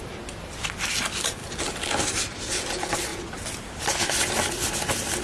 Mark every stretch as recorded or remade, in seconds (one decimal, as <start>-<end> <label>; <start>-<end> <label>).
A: 0.0-5.2 recorded